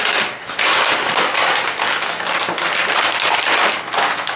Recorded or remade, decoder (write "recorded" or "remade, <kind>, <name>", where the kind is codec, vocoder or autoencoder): recorded